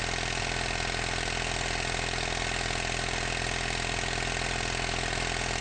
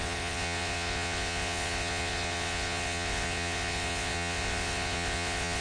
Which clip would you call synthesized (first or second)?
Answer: second